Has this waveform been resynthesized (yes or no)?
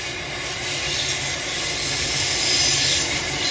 no